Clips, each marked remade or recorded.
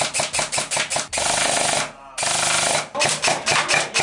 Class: recorded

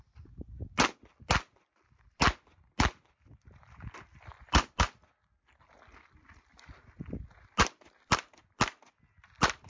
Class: recorded